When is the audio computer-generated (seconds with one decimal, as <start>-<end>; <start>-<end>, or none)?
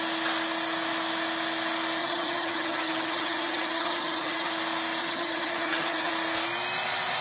2.0-4.5; 5.0-6.1